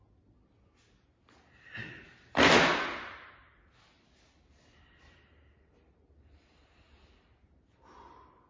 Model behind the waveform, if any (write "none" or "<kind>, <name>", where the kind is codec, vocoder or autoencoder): none